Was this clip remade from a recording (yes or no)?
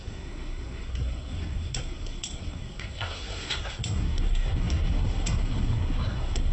yes